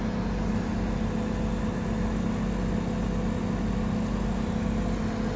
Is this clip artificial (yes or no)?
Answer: no